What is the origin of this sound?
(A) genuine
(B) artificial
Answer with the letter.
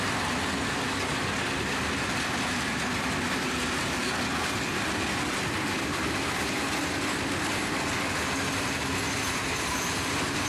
A